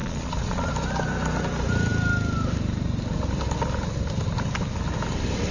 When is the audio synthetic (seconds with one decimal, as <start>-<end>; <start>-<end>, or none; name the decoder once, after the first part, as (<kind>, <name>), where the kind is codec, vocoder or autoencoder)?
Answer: 0.0-0.7 (vocoder, Vocos)